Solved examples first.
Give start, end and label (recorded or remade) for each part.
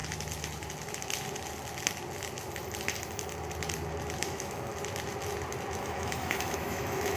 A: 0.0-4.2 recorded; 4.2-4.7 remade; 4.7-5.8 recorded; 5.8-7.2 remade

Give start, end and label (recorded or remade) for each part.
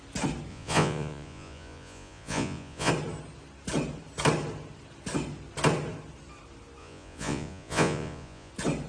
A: 0.0-0.5 recorded; 0.5-2.9 remade; 2.9-6.8 recorded; 6.8-8.5 remade; 8.5-8.9 recorded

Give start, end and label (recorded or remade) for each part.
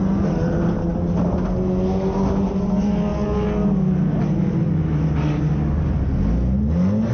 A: 0.0-7.1 recorded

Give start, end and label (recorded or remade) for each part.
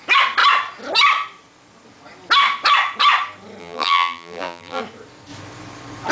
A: 0.0-3.6 recorded; 3.6-4.8 remade; 4.8-6.1 recorded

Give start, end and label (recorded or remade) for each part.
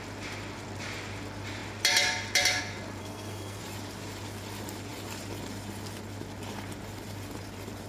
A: 0.0-3.0 recorded; 3.0-3.6 remade; 3.6-7.9 recorded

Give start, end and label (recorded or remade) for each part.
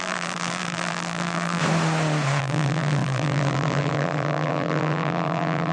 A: 0.0-1.6 remade; 1.6-2.4 recorded; 2.4-5.7 remade